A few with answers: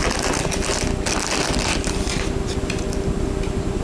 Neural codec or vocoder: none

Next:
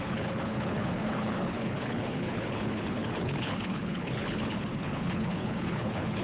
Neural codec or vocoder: codec, HILCodec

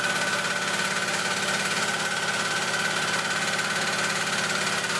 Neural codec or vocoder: none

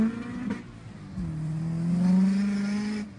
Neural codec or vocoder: none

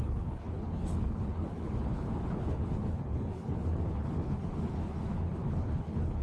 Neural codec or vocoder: codec, HILCodec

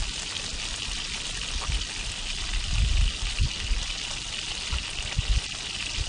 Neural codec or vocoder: none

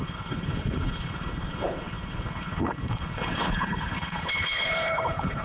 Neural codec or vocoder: codec, HILCodec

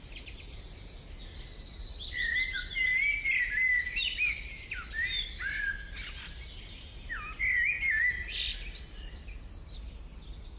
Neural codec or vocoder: none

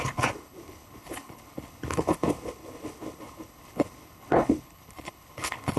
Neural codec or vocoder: codec, HILCodec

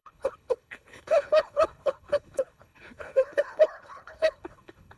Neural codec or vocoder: codec, HILCodec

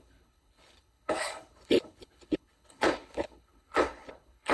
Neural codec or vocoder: codec, HILCodec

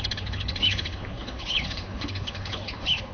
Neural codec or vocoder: codec, HILCodec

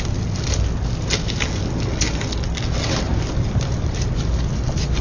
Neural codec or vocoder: none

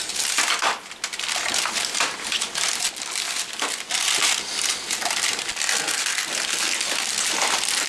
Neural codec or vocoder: none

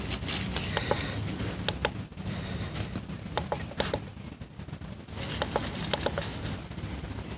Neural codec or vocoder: none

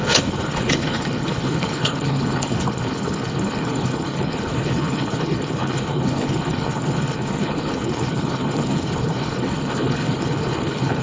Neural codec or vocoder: codec, HILCodec